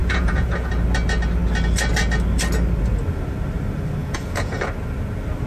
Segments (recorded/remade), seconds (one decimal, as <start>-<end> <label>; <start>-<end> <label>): 0.0-0.7 remade; 0.7-4.0 recorded; 4.0-4.6 remade; 4.6-5.5 recorded